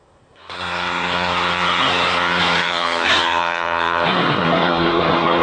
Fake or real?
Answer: fake